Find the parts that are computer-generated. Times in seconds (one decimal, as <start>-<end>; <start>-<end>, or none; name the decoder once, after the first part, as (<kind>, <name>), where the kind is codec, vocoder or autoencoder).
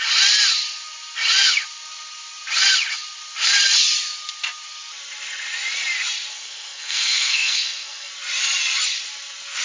6.3-8.1 (codec, SNAC)